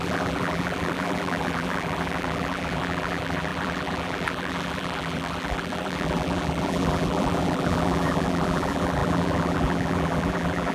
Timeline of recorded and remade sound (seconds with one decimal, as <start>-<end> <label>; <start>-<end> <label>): 0.0-10.7 remade